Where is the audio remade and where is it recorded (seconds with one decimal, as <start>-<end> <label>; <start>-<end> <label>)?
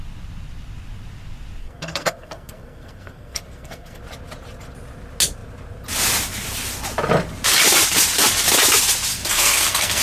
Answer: 0.0-1.6 recorded; 1.6-4.0 remade; 4.0-9.1 recorded; 9.1-10.0 remade